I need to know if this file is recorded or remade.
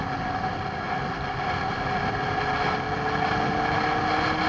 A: recorded